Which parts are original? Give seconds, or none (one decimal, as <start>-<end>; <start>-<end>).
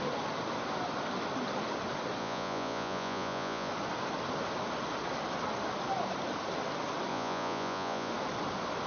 0.0-2.2; 3.7-7.1; 8.1-8.9